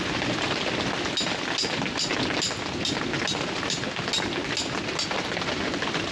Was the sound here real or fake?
real